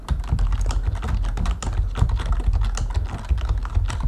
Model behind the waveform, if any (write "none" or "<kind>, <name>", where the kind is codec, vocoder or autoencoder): none